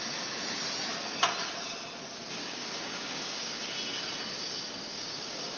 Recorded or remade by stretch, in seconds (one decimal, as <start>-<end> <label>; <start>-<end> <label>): 0.0-2.4 recorded; 2.4-3.7 remade; 3.7-4.8 recorded; 4.8-5.6 remade